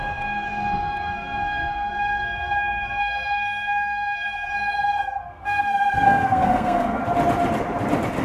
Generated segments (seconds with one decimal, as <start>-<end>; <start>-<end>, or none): 0.0-7.0